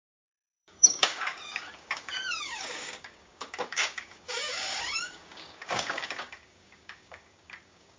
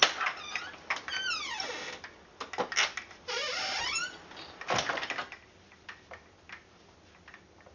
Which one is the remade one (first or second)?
first